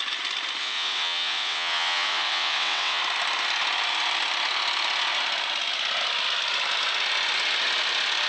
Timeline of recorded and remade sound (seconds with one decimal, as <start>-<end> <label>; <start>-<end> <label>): 0.0-0.6 recorded; 0.6-3.0 remade; 3.0-8.3 recorded